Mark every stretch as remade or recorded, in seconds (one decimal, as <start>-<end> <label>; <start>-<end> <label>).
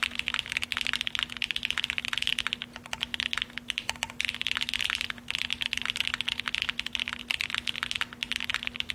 0.0-8.9 recorded